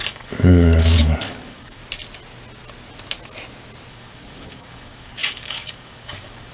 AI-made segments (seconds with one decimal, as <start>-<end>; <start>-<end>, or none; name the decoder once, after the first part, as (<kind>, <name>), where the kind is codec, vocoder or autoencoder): 0.0-1.8 (codec, DAC); 3.9-6.5